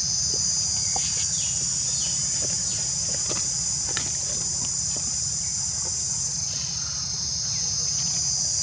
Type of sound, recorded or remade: recorded